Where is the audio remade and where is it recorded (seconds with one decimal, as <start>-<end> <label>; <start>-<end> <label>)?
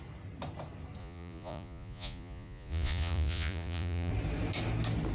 0.0-1.0 recorded; 1.0-4.1 remade; 4.1-5.1 recorded